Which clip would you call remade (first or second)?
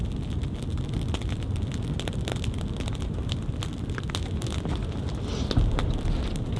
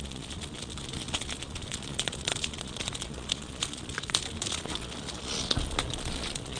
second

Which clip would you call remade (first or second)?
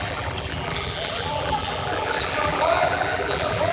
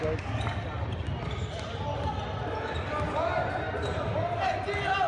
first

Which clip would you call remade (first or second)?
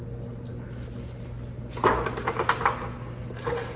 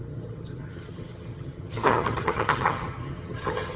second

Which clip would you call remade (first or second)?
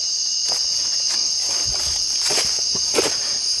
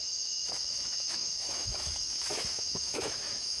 second